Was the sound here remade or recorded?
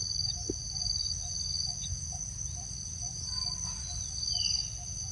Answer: recorded